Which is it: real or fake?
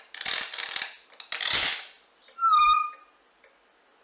real